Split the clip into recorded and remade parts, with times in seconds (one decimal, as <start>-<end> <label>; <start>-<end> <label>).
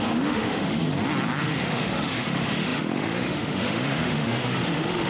0.0-0.8 remade; 0.8-1.4 recorded; 1.4-5.1 remade